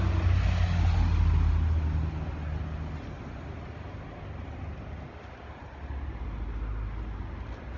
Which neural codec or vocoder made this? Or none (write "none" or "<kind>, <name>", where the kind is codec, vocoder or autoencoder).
none